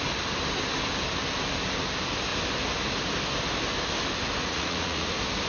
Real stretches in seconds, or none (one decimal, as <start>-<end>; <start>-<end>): 0.0-4.4; 5.1-5.5